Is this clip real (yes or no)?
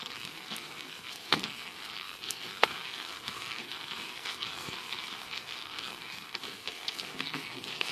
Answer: no